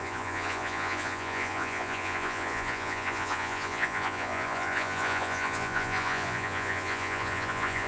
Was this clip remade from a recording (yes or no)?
yes